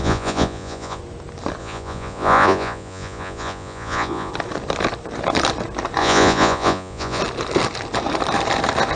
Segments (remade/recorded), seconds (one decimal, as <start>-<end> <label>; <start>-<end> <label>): 0.0-1.0 remade; 1.0-1.6 recorded; 1.6-4.3 remade; 4.3-6.0 recorded; 6.0-7.2 remade; 7.2-9.0 recorded

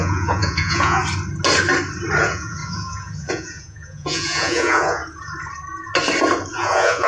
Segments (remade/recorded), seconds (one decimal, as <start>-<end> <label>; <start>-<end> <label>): 0.0-1.0 remade; 1.0-2.2 recorded; 2.2-5.0 remade; 5.0-6.5 recorded; 6.5-7.1 remade

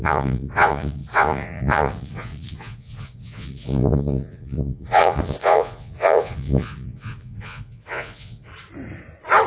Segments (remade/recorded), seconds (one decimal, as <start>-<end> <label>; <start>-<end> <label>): 0.0-8.5 remade; 8.5-9.5 recorded

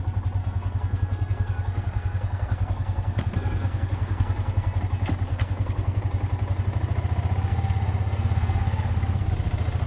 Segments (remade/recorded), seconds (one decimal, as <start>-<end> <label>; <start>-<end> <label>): 0.0-0.4 recorded; 0.4-4.8 remade; 4.8-5.3 recorded; 5.3-6.0 remade; 6.0-7.5 recorded; 7.5-9.3 remade; 9.3-9.9 recorded